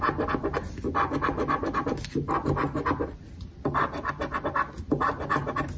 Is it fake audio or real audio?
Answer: real